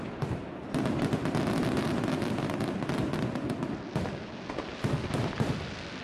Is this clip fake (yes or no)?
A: no